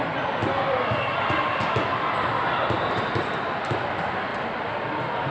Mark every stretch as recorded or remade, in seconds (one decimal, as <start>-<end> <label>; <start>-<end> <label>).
0.0-5.3 recorded